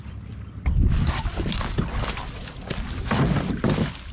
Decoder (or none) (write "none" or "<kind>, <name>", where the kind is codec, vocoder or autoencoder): none